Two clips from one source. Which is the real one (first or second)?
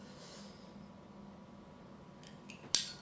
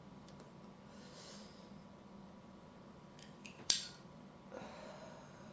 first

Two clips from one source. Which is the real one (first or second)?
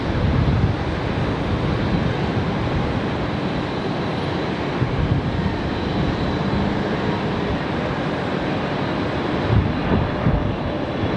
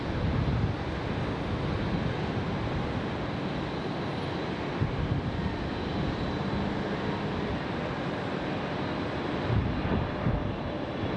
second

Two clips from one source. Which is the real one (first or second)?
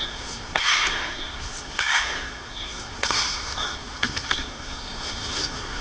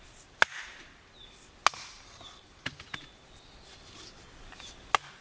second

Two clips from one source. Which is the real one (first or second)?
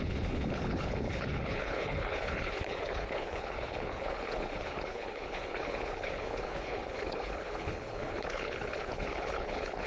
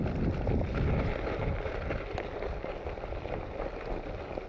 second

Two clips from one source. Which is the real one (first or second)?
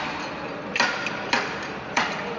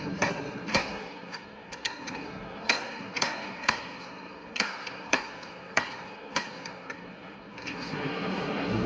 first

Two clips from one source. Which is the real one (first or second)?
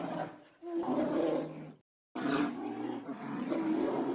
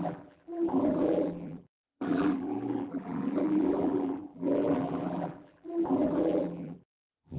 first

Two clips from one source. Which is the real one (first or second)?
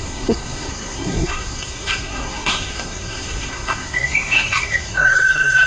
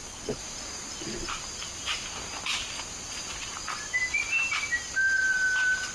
second